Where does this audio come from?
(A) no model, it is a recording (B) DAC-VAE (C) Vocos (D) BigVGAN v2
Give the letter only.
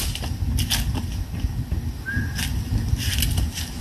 A